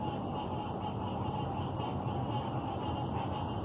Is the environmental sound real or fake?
real